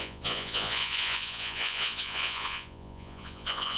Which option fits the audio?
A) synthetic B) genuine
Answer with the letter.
A